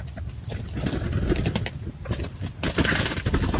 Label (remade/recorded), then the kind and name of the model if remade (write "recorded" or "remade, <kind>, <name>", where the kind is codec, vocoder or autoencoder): recorded